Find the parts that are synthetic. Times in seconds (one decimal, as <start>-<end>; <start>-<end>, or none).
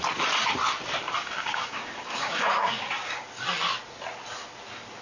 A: 1.2-3.2